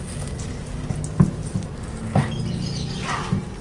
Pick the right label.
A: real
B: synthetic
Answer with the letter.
A